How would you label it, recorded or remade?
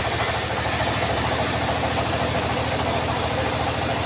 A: recorded